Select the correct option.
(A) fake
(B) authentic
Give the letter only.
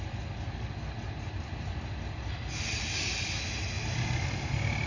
B